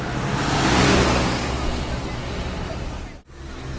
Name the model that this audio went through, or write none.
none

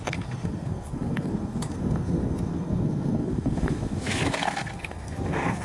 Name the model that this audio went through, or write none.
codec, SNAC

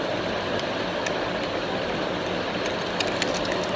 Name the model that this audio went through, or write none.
none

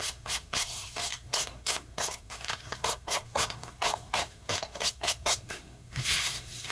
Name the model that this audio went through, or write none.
codec, SNAC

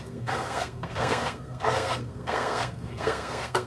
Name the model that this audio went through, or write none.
codec, SNAC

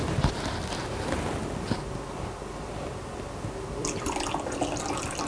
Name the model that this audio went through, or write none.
none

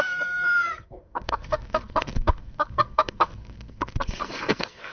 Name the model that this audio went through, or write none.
codec, SNAC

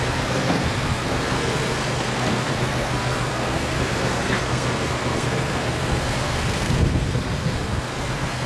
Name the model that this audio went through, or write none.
codec, SNAC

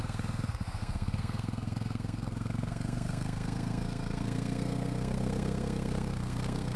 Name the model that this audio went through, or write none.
codec, SNAC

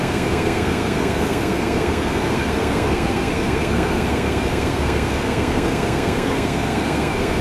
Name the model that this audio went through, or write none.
codec, SNAC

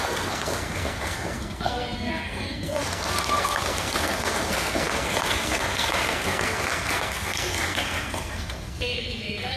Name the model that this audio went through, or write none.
codec, SNAC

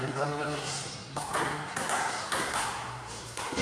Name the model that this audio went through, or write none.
codec, SNAC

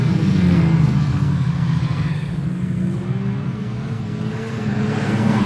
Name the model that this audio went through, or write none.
codec, SNAC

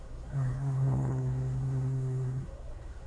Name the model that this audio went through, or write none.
codec, SNAC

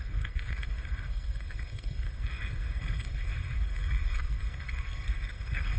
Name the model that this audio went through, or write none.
codec, SNAC